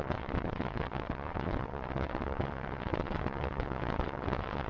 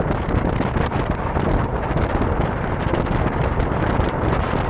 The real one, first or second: second